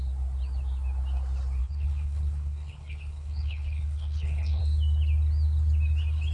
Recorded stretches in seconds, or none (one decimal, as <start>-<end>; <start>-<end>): 0.0-1.6; 4.6-6.3